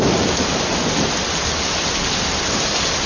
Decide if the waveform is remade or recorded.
recorded